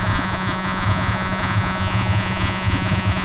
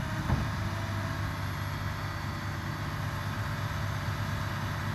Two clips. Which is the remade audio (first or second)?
first